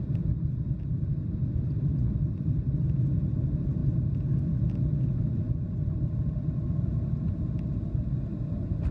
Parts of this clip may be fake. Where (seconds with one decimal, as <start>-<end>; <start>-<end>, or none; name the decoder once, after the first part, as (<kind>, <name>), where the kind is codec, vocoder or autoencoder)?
none